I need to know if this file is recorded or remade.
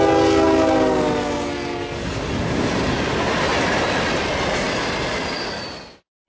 recorded